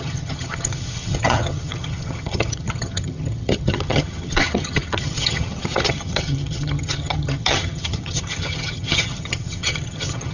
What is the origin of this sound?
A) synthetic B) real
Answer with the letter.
A